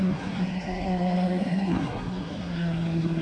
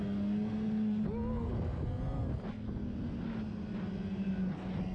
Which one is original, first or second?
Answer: second